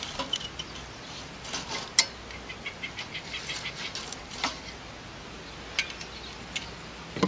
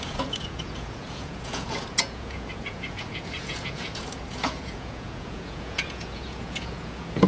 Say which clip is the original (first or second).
first